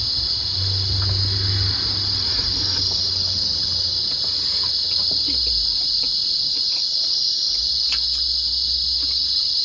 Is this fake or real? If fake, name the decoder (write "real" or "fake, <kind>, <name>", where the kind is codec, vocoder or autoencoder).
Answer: real